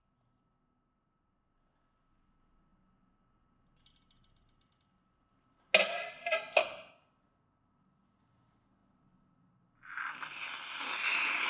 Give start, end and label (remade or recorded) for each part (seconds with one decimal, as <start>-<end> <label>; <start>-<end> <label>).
0.0-11.5 recorded